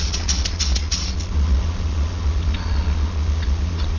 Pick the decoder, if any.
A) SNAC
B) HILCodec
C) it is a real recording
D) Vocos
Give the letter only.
D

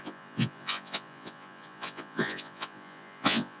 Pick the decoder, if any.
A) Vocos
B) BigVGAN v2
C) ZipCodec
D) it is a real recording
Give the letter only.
A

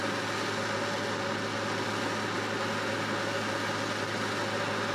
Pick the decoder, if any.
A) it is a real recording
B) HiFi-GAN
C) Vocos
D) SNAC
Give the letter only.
A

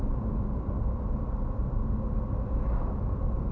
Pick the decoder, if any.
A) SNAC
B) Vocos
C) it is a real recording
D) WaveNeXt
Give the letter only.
C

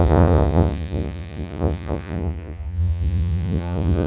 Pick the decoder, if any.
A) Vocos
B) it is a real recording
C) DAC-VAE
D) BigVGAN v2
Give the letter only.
A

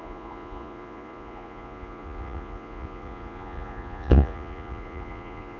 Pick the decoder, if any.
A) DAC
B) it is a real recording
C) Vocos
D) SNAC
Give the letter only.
C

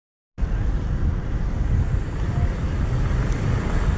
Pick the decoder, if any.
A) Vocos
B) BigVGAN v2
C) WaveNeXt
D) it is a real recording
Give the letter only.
D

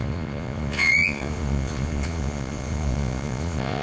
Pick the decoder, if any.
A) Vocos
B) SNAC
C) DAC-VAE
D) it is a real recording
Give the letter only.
A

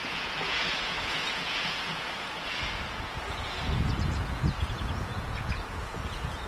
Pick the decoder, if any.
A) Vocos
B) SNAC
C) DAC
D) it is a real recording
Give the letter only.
A